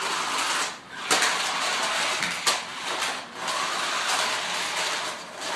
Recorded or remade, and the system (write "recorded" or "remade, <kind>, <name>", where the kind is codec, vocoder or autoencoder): recorded